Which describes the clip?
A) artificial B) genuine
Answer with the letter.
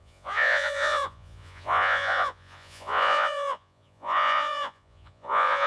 A